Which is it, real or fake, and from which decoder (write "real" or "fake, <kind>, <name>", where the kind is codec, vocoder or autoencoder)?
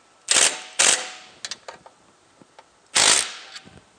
real